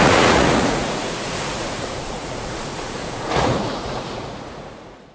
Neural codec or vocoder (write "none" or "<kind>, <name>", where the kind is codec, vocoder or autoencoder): vocoder, Vocos